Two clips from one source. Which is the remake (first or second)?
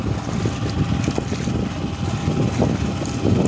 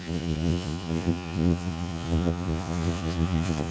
second